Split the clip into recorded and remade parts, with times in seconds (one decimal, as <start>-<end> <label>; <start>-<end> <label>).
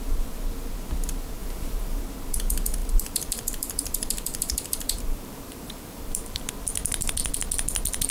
0.0-1.4 recorded; 1.4-2.0 remade; 2.0-2.8 recorded; 2.8-6.4 remade; 6.4-8.1 recorded